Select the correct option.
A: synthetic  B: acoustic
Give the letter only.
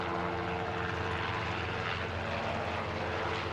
B